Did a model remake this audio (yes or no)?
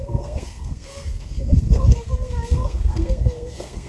yes